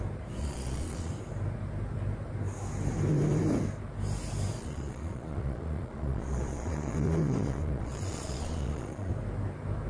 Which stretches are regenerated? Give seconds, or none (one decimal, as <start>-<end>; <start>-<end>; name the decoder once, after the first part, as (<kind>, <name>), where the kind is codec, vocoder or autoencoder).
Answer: 0.4-1.1 (vocoder, Vocos); 4.6-9.1